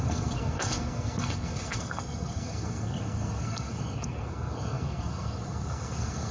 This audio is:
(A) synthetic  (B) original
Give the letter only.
A